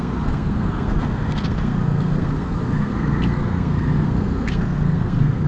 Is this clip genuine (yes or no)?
no